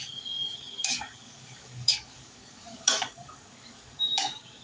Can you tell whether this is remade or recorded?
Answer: remade